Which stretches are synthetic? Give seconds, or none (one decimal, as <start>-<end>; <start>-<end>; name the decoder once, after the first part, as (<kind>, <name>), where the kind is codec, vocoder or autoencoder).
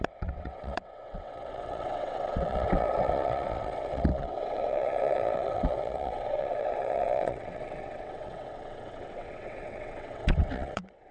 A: 0.0-11.1 (vocoder, WaveNeXt)